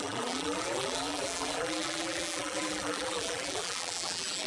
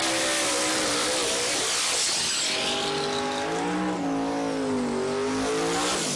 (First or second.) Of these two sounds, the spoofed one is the first